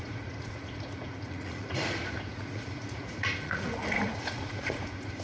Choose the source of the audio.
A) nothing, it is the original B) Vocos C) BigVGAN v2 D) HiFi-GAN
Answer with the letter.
B